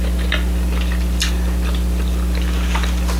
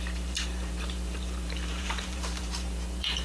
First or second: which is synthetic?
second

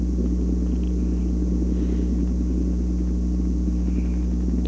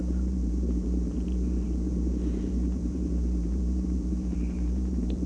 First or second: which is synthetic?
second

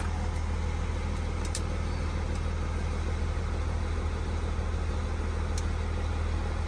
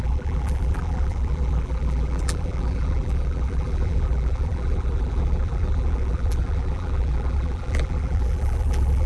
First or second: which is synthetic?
second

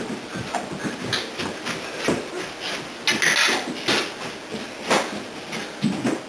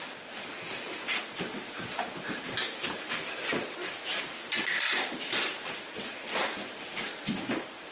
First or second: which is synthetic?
second